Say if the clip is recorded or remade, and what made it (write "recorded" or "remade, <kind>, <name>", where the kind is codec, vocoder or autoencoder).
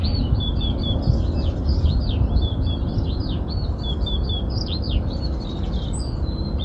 recorded